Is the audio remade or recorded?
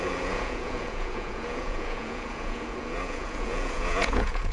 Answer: remade